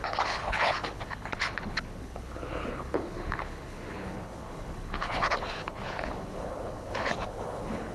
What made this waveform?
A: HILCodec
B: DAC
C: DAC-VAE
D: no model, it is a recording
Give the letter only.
A